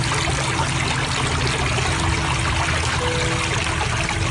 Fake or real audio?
real